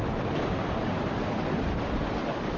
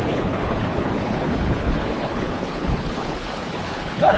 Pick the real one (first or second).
first